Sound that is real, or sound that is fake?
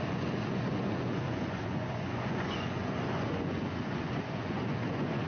fake